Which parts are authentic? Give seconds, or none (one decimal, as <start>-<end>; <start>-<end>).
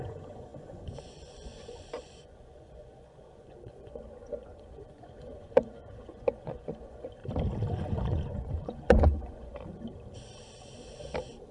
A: 7.2-7.7; 9.5-11.5